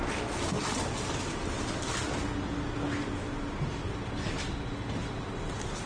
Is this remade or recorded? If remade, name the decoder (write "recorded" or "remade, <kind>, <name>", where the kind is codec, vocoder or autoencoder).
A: recorded